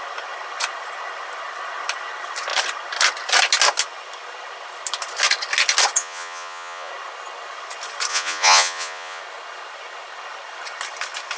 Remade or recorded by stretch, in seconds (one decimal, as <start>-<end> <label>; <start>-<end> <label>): 0.0-6.0 recorded; 6.0-6.9 remade; 6.9-8.1 recorded; 8.1-9.2 remade; 9.2-11.4 recorded